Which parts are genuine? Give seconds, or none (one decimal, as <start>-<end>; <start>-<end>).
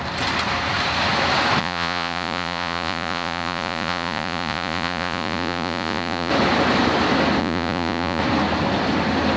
0.0-1.6; 6.3-7.4; 8.2-9.4